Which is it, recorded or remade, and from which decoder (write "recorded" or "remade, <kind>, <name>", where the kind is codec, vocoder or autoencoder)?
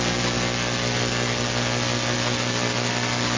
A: recorded